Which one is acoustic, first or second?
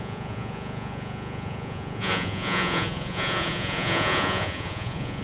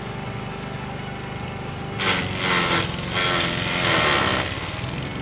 second